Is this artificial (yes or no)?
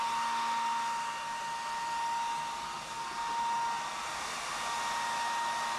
no